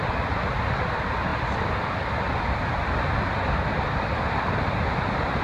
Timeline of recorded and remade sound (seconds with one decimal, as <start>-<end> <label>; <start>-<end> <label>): 0.0-5.4 recorded